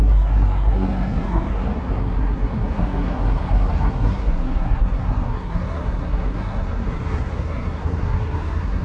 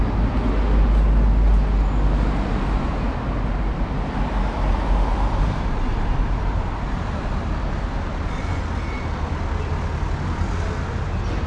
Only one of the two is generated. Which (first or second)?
first